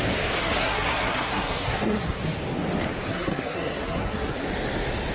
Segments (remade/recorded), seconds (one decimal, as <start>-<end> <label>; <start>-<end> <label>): 0.0-0.4 recorded; 0.4-2.2 remade; 2.2-3.1 recorded; 3.1-4.3 remade; 4.3-5.1 recorded